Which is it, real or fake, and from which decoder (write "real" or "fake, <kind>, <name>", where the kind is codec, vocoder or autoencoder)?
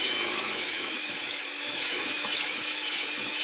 fake, autoencoder, DAC-VAE